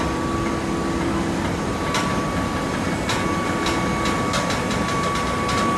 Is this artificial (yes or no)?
no